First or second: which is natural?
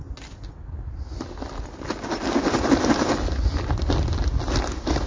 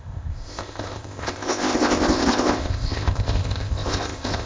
first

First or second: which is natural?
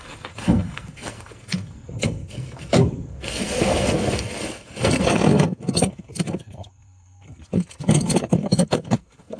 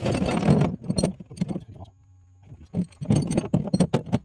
second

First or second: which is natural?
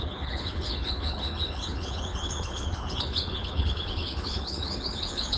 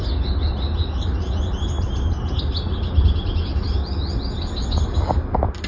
second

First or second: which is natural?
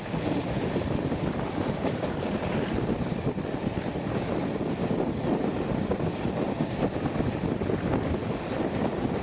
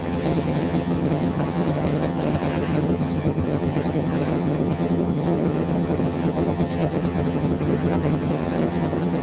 first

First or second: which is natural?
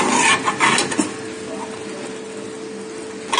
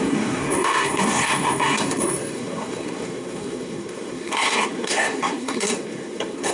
first